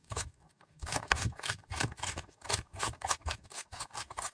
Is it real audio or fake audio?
fake